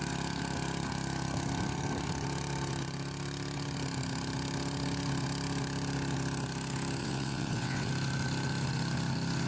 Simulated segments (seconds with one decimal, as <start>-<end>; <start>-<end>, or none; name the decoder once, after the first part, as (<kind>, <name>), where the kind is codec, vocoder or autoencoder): 7.0-7.9 (vocoder, WaveNeXt)